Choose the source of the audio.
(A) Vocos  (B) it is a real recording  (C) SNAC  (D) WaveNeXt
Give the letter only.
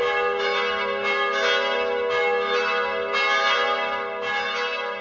B